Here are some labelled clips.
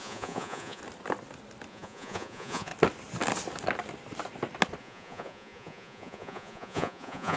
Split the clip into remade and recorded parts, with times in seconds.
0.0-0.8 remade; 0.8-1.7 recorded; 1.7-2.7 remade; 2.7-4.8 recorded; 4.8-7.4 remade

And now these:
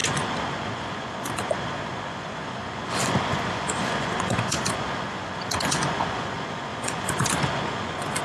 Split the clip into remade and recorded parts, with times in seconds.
0.0-8.2 remade

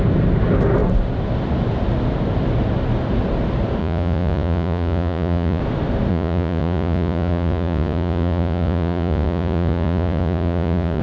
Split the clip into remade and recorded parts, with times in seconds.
0.0-3.8 recorded; 3.8-5.6 remade; 5.6-6.1 recorded; 6.1-11.0 remade